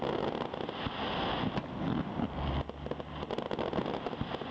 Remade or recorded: recorded